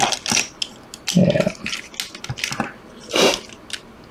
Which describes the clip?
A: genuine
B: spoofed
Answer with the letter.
A